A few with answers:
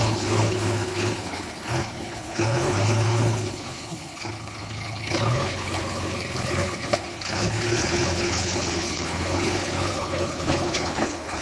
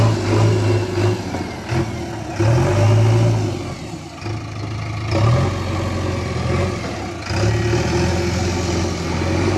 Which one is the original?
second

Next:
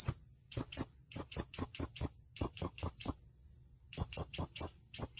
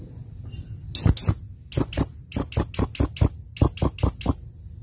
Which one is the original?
second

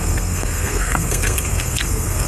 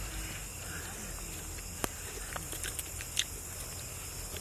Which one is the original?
second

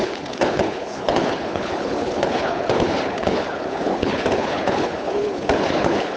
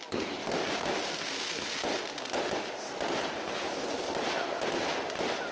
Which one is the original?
second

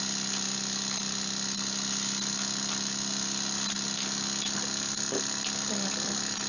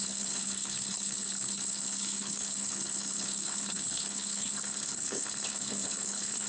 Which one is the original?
first